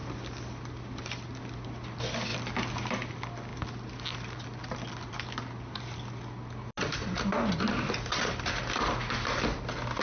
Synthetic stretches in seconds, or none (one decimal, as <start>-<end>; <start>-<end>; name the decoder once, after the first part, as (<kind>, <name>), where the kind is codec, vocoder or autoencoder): none

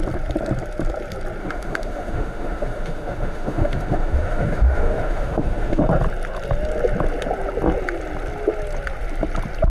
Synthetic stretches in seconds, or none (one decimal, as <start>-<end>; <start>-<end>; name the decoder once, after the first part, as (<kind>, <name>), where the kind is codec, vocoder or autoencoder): 1.4-5.8 (autoencoder, DAC-VAE)